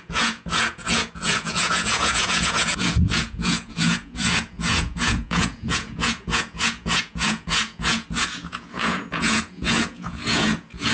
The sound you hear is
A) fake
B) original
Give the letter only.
A